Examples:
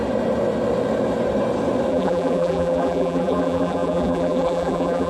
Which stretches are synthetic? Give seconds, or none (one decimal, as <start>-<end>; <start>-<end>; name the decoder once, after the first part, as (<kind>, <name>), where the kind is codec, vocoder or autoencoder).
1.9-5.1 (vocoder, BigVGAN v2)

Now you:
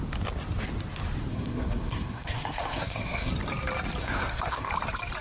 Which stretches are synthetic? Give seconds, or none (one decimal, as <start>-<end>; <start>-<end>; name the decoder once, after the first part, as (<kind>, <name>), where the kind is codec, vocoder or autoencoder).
1.3-3.3 (codec, SNAC); 4.0-4.7

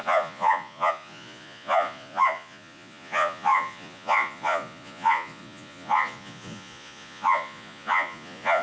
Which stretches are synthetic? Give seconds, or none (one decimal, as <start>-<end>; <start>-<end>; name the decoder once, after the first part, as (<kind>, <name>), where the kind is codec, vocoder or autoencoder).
0.0-8.6 (vocoder, Vocos)

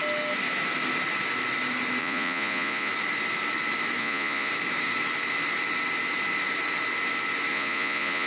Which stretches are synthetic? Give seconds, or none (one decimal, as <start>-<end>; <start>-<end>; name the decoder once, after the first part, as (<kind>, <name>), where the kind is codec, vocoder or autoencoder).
2.0-2.9 (vocoder, Vocos); 4.0-4.5; 7.5-8.3

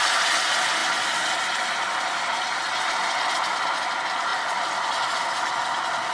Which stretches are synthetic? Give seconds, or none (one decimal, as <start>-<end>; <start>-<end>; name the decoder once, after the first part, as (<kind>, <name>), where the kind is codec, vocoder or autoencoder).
none

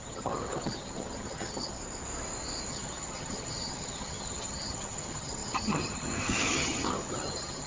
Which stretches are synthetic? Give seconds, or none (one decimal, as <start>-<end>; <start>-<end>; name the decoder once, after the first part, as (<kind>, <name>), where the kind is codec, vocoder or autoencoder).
0.0-1.8 (vocoder, HiFi-GAN); 2.7-7.7

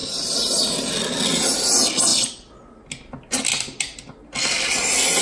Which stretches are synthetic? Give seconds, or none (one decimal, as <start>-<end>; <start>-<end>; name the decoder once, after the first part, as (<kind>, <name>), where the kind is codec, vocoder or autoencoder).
0.0-0.9 (vocoder, BigVGAN v2)